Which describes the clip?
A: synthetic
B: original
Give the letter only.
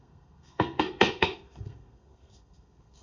A